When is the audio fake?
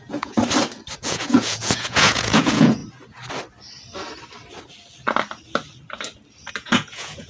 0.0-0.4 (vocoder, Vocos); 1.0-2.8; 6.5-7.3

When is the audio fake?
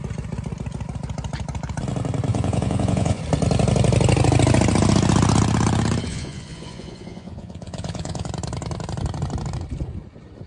2.3-3.2 (vocoder, Vocos); 6.1-8.3